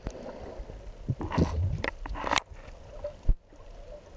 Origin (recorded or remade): recorded